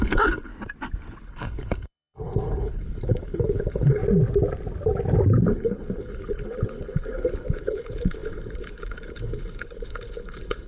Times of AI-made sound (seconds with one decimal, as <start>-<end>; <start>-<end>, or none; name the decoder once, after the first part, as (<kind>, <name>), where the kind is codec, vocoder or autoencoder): 0.0-0.5 (codec, HILCodec); 1.2-4.0; 5.4-10.7